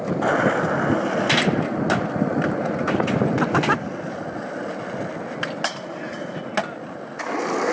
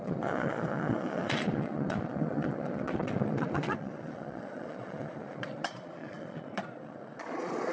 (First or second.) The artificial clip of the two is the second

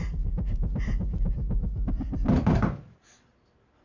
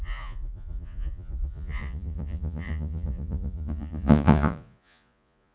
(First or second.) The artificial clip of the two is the second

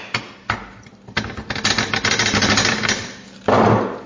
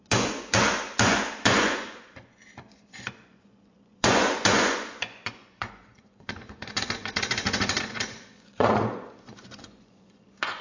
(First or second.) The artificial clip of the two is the second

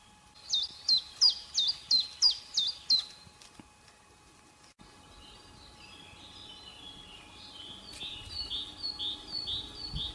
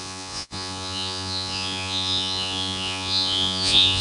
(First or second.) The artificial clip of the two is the second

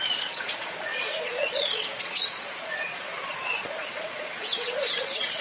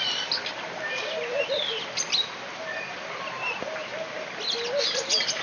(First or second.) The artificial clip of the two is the first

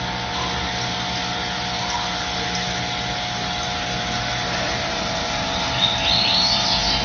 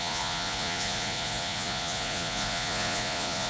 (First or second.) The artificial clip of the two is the second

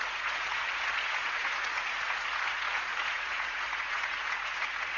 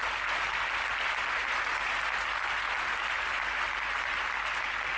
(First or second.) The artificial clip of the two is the first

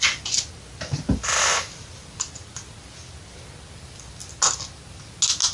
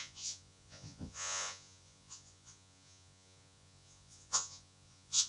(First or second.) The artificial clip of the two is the second